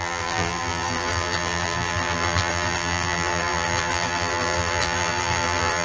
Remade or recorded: remade